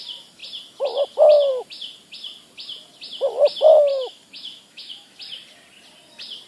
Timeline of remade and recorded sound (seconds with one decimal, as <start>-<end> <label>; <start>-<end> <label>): 0.0-3.9 recorded; 3.9-5.2 remade; 5.2-6.5 recorded